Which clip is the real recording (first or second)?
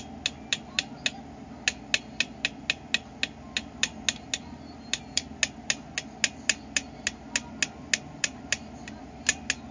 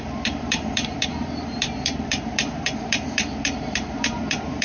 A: first